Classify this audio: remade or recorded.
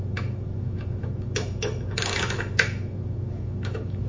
remade